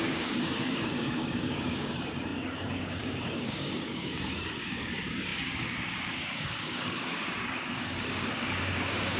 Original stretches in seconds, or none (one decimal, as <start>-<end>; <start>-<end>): none